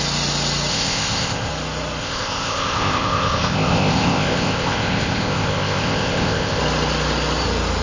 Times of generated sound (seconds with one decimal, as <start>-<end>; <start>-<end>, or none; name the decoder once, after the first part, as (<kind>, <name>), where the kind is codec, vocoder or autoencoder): 0.7-1.5 (codec, ZipCodec); 2.0-6.6